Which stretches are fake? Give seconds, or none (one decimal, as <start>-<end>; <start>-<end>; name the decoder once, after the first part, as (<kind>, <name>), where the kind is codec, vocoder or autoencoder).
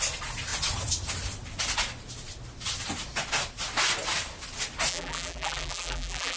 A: 4.9-6.4 (vocoder, BigVGAN v2)